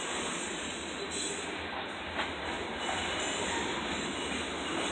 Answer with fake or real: real